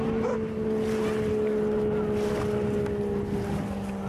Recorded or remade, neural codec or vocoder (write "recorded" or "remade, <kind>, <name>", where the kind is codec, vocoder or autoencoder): recorded